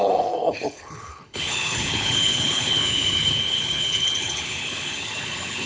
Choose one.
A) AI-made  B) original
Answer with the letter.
A